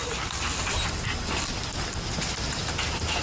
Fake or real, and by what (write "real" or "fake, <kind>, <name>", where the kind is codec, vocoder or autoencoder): real